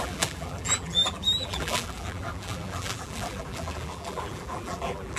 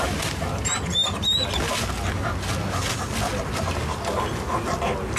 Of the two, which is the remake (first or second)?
first